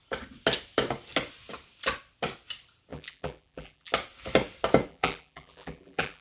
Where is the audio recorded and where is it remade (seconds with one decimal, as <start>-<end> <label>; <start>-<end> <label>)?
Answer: 0.0-2.9 recorded; 2.9-3.9 remade; 3.9-4.9 recorded; 4.9-6.2 remade